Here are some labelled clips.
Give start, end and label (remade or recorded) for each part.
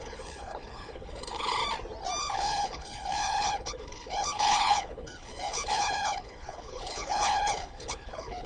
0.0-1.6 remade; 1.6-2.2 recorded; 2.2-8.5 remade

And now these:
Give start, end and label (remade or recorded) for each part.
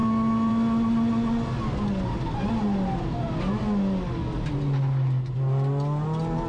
0.0-6.5 recorded